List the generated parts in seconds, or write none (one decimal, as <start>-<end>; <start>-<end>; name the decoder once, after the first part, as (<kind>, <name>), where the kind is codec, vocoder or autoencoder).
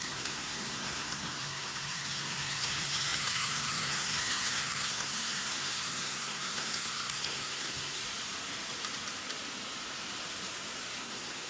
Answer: 0.0-8.0 (codec, SNAC); 11.0-11.5